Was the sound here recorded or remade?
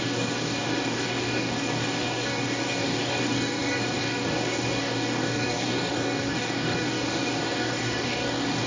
remade